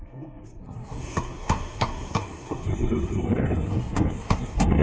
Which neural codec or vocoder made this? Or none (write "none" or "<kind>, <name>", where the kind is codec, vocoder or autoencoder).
codec, SNAC